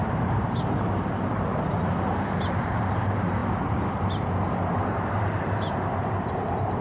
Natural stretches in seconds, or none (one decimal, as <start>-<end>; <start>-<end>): 1.5-2.1